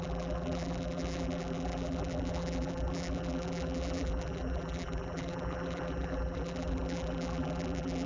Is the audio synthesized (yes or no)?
yes